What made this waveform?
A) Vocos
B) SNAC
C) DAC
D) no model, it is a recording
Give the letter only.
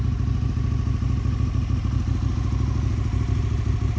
D